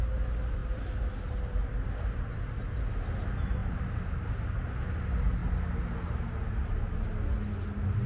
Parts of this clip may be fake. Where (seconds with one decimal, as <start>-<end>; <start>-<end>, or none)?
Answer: 3.6-4.3